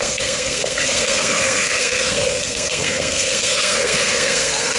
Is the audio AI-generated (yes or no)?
yes